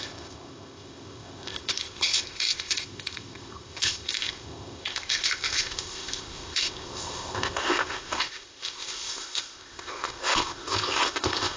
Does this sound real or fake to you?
fake